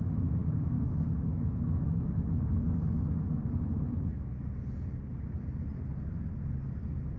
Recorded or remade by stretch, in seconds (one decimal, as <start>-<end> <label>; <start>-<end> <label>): 0.0-0.4 recorded; 0.4-4.3 remade; 4.3-7.2 recorded